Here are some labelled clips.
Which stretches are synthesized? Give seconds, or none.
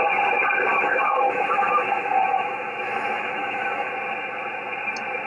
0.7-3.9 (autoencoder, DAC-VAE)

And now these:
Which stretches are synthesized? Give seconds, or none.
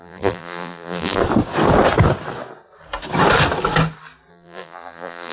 0.0-1.2 (vocoder, BigVGAN v2); 4.3-5.3